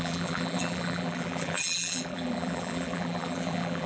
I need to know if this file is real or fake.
fake